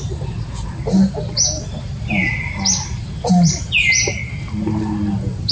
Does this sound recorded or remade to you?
recorded